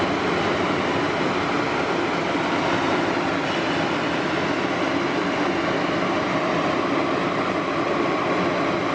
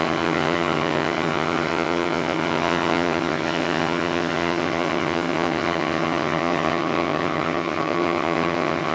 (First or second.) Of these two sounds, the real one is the first